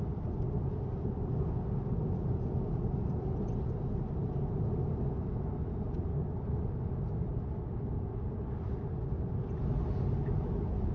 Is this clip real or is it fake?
real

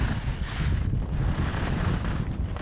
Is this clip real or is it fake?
real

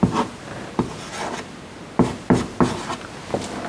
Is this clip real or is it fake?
real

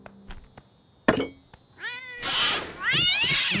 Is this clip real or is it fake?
real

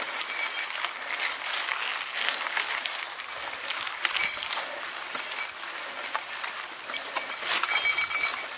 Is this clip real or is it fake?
real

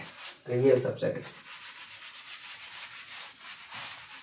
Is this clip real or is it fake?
real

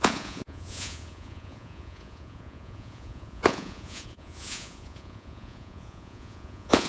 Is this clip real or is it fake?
fake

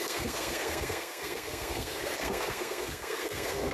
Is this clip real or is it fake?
fake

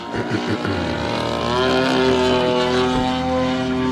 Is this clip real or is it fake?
real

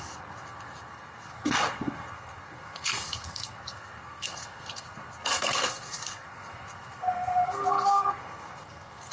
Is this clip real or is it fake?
fake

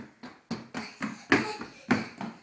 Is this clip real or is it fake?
real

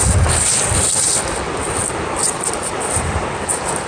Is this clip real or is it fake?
real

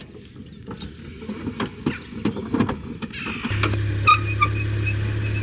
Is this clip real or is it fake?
real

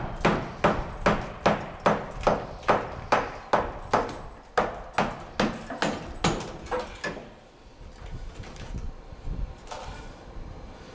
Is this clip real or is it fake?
real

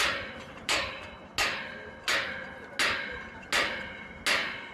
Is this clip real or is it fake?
real